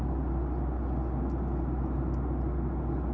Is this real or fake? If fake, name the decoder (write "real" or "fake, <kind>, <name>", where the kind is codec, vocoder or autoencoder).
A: real